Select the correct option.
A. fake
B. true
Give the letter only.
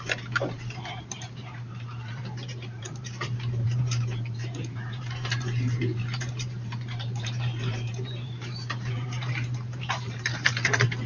A